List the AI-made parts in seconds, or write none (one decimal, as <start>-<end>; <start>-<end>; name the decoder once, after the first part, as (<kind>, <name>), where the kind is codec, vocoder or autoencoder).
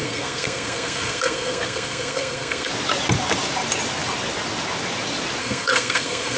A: 0.0-2.7 (codec, SNAC); 5.4-6.4